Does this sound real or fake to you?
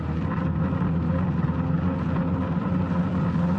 real